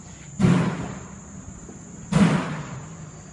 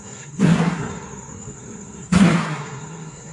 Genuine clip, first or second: first